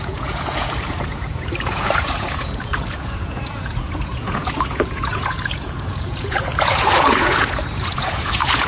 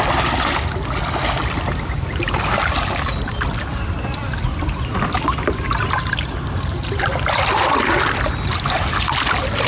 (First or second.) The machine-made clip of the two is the first